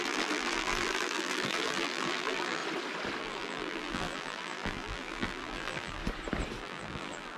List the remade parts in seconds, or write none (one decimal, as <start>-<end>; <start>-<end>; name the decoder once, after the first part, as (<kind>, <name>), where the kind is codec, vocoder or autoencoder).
0.0-2.6 (vocoder, BigVGAN v2); 3.2-6.0; 6.6-7.4